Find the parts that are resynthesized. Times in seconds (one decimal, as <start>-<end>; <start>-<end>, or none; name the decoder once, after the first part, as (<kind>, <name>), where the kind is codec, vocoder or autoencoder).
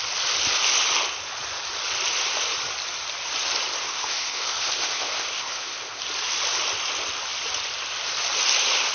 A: 3.8-6.0 (codec, ZipCodec)